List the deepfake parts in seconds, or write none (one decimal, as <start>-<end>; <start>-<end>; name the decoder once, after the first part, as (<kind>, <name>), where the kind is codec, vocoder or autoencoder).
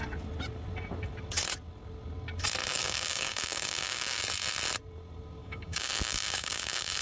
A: 2.6-4.2 (codec, DAC); 5.4-7.0